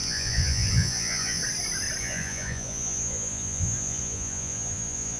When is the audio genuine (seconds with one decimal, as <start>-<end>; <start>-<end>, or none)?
1.4-2.0